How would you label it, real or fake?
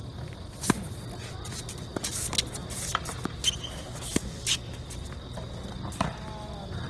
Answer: real